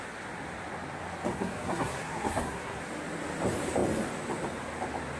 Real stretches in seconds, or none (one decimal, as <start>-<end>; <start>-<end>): 0.0-1.3; 2.8-5.2